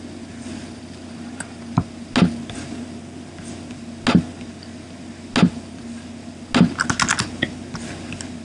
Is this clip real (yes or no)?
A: yes